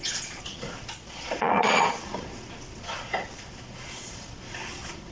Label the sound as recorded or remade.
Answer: remade